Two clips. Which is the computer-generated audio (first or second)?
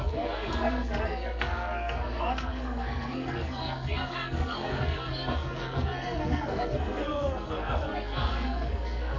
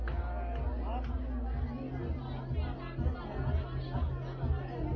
first